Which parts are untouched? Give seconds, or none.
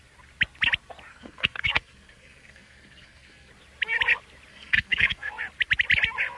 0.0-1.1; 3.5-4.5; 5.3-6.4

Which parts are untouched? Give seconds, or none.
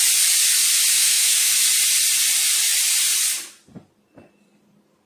0.0-0.9; 1.5-5.1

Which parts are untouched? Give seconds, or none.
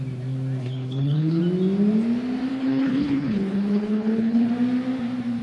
0.0-0.6; 1.4-2.5; 4.5-5.4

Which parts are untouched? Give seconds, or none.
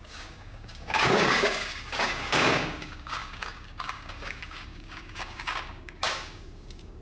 none